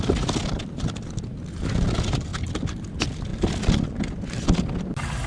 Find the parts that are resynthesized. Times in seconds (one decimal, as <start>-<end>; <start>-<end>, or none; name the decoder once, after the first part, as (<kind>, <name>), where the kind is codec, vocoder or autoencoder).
none